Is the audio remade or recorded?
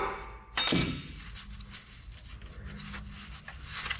recorded